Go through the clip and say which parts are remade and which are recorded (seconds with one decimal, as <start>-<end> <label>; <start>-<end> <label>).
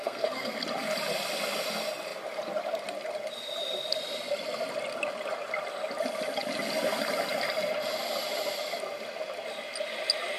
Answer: 0.0-0.6 remade; 0.6-10.4 recorded